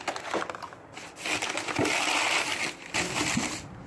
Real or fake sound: real